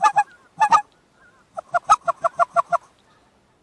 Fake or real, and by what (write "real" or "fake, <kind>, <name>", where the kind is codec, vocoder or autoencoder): fake, vocoder, BigVGAN v2